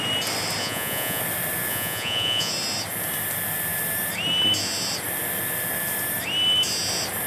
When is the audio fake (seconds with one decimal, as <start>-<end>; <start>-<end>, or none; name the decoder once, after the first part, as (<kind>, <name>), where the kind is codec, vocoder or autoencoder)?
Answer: 0.6-1.2 (vocoder, Vocos); 1.7-2.5